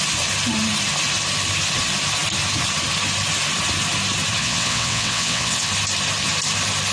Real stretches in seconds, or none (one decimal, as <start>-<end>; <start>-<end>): 0.0-4.4; 5.7-6.9